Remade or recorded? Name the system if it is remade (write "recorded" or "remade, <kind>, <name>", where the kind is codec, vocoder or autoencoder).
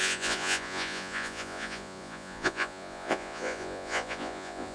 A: remade, vocoder, Vocos